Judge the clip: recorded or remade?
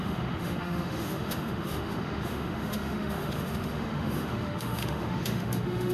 remade